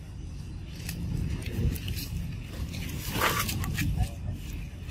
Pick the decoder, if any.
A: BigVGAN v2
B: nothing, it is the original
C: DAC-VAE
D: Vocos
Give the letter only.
B